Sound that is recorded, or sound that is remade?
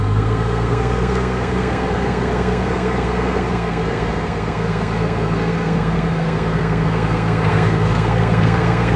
remade